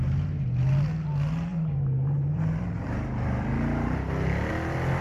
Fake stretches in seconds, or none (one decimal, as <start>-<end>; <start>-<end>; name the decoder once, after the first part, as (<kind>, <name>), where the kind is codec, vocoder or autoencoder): 1.5-4.5 (vocoder, BigVGAN v2)